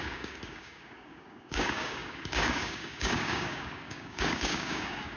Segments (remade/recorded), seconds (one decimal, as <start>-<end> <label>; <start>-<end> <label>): 0.0-5.2 remade